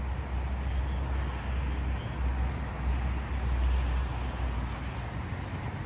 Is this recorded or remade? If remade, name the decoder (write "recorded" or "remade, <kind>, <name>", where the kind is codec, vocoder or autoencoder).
recorded